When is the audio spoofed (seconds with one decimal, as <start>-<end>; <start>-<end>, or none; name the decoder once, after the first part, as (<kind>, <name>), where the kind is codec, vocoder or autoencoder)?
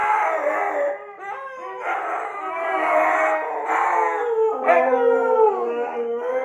2.5-3.1 (codec, DAC); 4.8-6.4